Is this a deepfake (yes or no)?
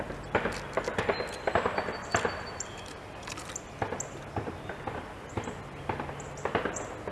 yes